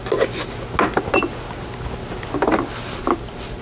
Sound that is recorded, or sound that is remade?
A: recorded